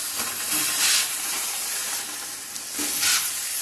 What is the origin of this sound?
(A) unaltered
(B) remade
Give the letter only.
A